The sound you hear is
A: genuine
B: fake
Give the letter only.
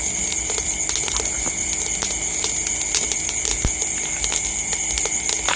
A